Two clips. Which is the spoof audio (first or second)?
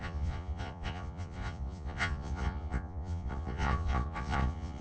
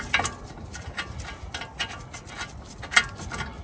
first